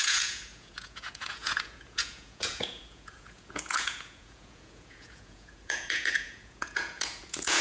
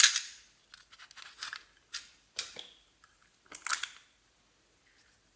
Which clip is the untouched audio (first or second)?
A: second